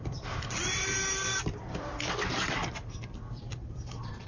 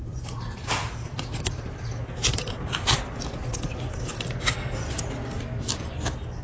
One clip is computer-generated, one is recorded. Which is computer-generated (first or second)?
first